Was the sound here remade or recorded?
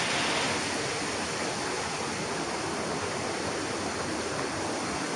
recorded